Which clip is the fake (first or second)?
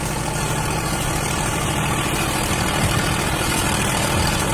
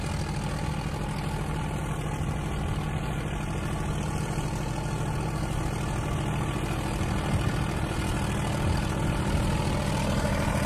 first